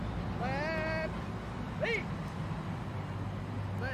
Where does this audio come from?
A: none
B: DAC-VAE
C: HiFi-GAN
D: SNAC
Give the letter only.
A